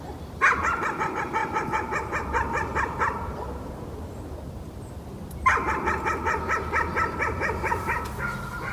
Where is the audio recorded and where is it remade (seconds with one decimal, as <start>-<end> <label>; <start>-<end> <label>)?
0.0-8.7 recorded